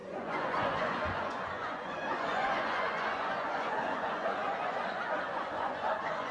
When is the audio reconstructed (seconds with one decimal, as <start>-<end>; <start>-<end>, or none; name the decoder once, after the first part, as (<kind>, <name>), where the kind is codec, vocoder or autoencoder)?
0.0-6.3 (vocoder, Vocos)